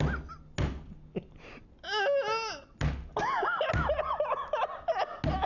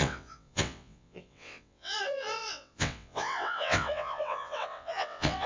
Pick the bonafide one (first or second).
first